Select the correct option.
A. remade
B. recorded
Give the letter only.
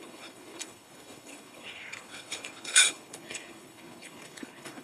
A